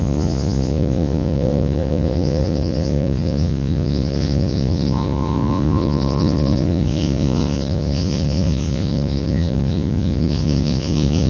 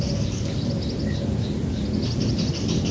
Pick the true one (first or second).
second